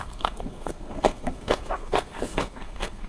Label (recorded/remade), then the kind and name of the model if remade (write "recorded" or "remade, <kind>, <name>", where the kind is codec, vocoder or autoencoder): remade, codec, SNAC